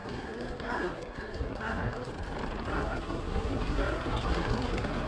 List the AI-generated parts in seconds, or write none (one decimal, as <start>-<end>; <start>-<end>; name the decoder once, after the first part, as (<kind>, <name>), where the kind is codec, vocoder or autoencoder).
0.0-2.1 (codec, SNAC); 2.7-5.1